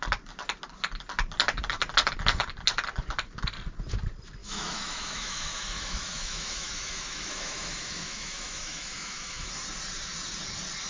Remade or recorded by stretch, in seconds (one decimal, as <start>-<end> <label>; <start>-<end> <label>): 0.0-4.4 recorded; 4.4-9.5 remade; 9.5-10.9 recorded